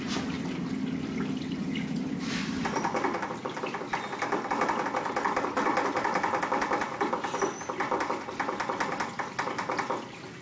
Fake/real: real